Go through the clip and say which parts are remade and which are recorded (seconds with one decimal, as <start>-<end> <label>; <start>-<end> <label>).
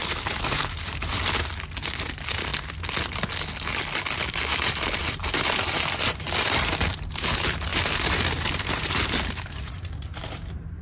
0.0-1.2 remade; 1.2-2.1 recorded; 2.1-2.5 remade; 2.5-4.3 recorded; 4.3-10.8 remade